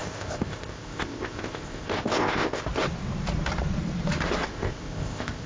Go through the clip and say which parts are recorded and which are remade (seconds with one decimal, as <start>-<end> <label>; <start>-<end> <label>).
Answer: 0.0-2.7 remade; 2.7-4.5 recorded; 4.5-5.5 remade